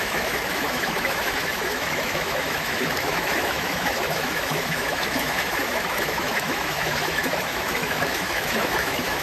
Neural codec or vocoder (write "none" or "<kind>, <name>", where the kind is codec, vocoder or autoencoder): autoencoder, DAC-VAE